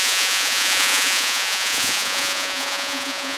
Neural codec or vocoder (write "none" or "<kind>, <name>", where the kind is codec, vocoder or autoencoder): vocoder, Vocos